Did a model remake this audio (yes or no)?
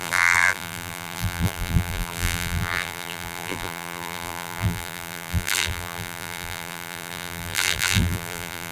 yes